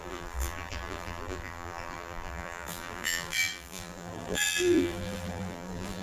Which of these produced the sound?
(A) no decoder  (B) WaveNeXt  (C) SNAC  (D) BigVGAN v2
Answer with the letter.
D